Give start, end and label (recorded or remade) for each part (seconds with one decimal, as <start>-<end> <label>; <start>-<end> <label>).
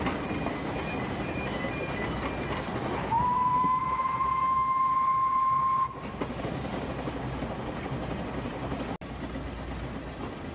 0.0-3.0 recorded; 3.0-4.9 remade; 4.9-10.5 recorded